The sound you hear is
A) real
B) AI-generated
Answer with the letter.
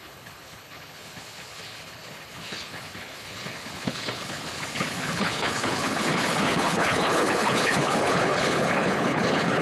B